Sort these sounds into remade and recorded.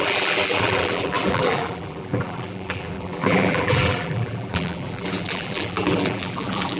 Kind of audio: remade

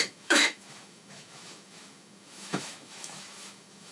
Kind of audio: remade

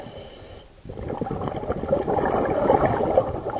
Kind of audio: recorded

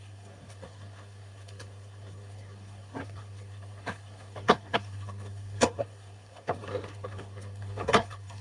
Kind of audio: remade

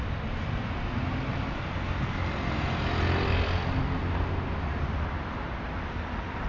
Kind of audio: recorded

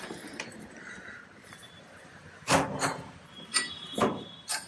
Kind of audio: remade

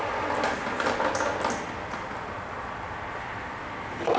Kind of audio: recorded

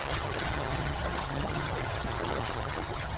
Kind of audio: remade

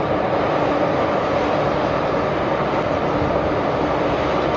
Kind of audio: recorded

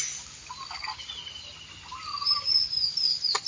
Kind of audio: recorded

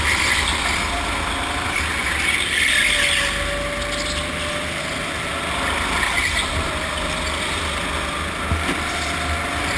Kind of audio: recorded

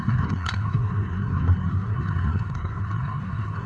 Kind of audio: remade